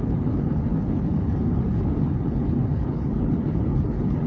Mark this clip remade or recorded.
remade